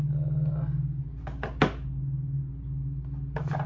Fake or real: real